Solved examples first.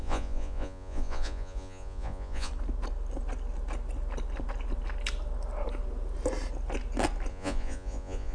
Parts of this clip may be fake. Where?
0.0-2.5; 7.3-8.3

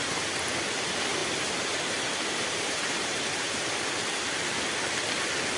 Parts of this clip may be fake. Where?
1.2-3.5

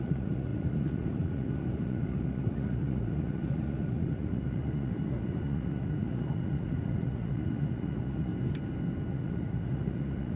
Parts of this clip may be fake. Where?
0.0-8.3; 9.1-10.4

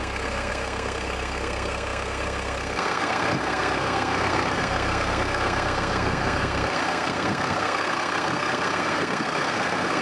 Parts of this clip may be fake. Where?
0.0-10.0

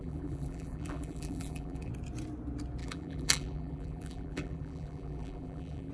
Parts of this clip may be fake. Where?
0.0-1.9; 2.8-5.9